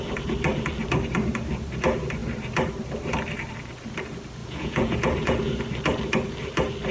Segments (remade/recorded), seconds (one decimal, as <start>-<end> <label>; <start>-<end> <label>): 0.0-4.4 recorded; 4.4-5.6 remade; 5.6-6.9 recorded